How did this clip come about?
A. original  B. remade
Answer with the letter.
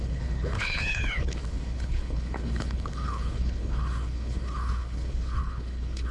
B